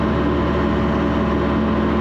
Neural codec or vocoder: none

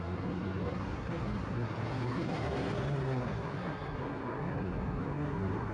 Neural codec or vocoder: codec, SNAC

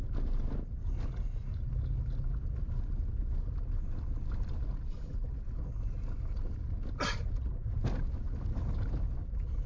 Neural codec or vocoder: none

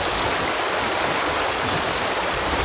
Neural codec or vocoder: none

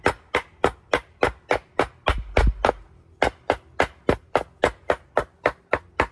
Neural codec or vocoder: none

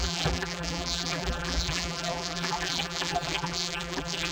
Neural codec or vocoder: vocoder, BigVGAN v2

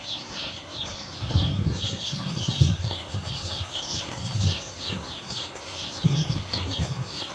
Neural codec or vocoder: codec, SNAC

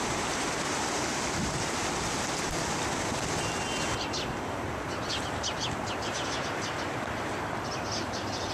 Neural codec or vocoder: none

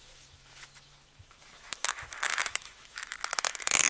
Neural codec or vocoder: autoencoder, DAC-VAE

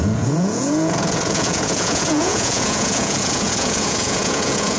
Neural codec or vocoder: vocoder, Vocos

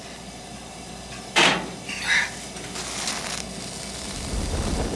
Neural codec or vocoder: none